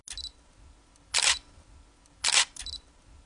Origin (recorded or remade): recorded